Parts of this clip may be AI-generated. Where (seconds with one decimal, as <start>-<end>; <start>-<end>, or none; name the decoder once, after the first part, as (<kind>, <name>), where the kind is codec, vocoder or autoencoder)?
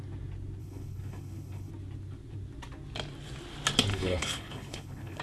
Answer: 0.6-1.7 (codec, HILCodec); 3.9-5.2